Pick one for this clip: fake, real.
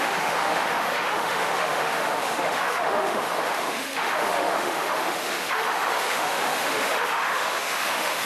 fake